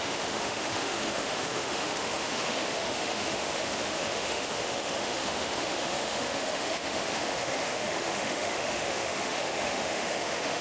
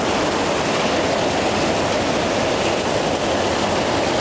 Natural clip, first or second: second